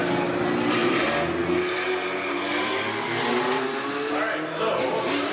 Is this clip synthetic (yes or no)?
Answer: no